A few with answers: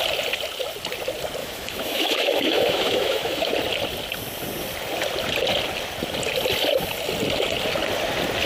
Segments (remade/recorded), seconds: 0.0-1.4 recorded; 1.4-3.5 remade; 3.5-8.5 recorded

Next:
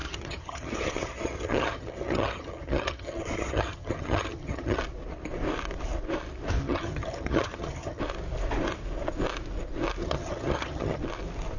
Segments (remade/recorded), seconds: 0.0-4.8 remade; 4.8-6.6 recorded; 6.6-8.0 remade; 8.0-10.0 recorded; 10.0-11.0 remade; 11.0-11.6 recorded

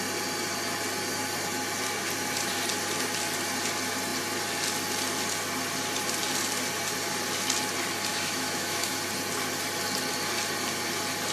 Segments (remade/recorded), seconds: 0.0-8.1 recorded; 8.1-8.9 remade; 8.9-11.3 recorded